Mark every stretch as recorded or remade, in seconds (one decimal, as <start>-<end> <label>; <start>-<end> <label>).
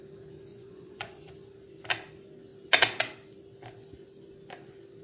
0.0-0.5 recorded; 0.5-1.3 remade; 1.3-5.0 recorded